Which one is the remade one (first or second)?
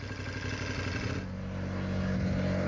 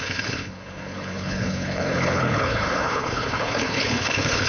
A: second